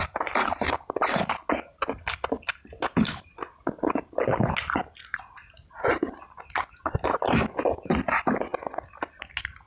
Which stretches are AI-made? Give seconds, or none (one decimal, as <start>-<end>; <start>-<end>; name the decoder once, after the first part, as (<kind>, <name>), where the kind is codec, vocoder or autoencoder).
none